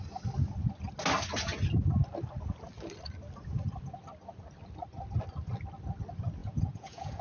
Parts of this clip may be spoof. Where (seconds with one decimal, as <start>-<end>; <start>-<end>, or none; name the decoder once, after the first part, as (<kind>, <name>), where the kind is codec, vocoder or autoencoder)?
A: 6.4-7.2 (vocoder, Vocos)